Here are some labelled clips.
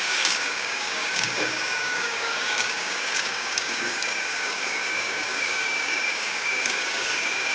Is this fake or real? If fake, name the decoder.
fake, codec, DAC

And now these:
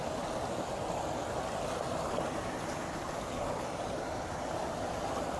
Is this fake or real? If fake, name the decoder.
real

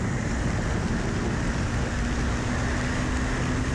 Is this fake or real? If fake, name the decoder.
real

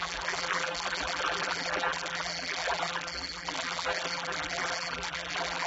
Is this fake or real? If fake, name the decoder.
fake, vocoder, BigVGAN v2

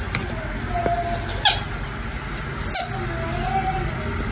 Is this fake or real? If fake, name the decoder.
real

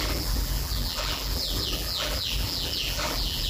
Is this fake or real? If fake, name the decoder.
fake, vocoder, BigVGAN v2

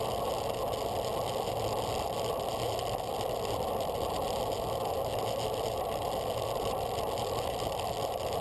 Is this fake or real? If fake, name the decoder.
real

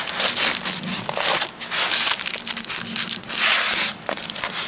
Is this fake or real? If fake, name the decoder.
real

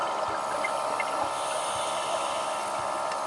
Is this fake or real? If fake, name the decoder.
real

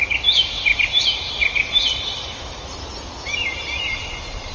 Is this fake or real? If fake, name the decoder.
real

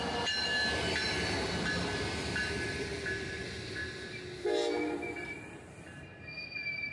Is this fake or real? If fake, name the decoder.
real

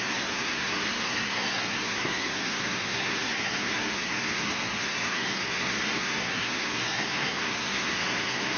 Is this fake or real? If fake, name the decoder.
fake, codec, SNAC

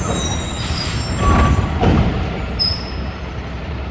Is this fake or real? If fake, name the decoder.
fake, vocoder, BigVGAN v2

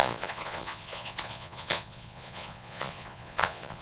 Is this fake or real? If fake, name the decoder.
fake, vocoder, Vocos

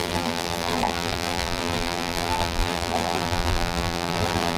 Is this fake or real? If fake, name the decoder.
fake, vocoder, BigVGAN v2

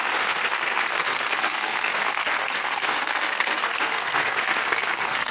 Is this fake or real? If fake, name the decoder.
fake, codec, SNAC